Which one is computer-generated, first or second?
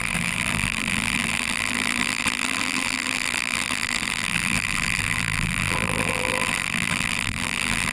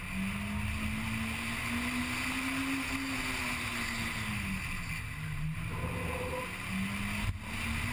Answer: first